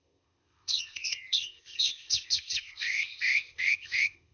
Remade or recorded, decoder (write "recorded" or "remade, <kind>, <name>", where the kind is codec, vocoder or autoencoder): remade, codec, ZipCodec